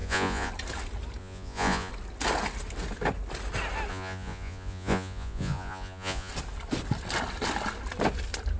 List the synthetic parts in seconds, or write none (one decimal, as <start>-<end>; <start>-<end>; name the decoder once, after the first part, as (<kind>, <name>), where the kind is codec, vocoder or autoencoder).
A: 0.0-0.5 (vocoder, Vocos); 1.2-1.9; 3.9-6.3